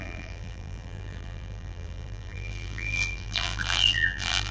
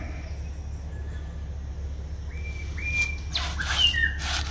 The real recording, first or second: second